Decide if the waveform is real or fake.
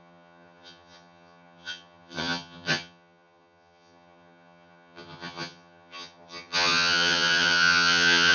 fake